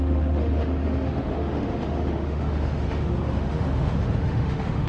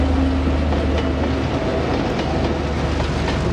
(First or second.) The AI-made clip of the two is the first